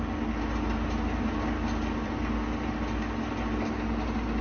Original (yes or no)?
yes